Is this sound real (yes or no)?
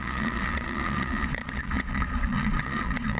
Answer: no